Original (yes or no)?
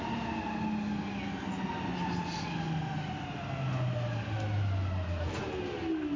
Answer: yes